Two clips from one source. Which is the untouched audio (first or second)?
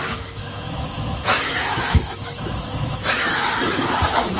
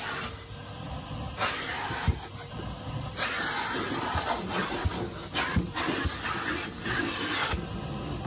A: second